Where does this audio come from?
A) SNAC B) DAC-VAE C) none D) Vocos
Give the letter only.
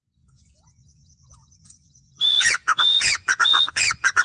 D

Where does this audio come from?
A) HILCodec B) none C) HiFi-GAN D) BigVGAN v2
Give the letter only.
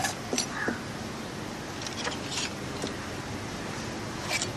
B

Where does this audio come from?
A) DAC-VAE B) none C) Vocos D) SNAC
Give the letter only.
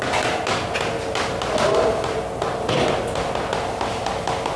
B